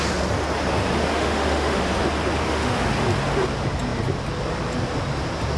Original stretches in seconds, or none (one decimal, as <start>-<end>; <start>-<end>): 0.0-1.1; 1.8-2.4; 3.0-5.6